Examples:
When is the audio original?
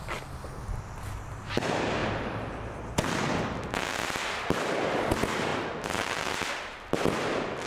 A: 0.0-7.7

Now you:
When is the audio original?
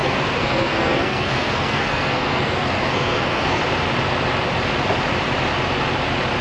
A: 3.6-6.4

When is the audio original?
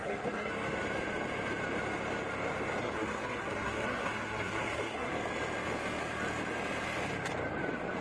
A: 0.5-2.8; 5.1-8.0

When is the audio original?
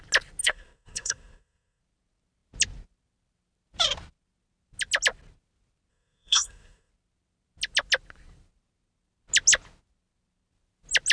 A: 0.0-0.4; 1.8-5.9; 6.9-11.1